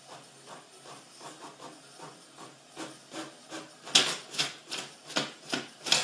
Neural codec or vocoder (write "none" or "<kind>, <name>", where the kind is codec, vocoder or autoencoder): none